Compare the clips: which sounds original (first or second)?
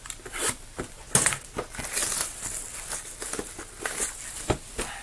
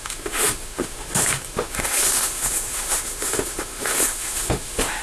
first